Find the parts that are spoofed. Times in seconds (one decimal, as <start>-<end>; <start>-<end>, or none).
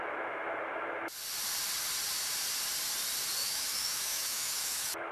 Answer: 3.4-5.1